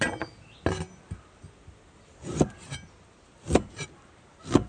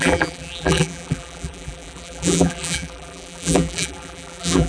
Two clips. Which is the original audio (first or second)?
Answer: first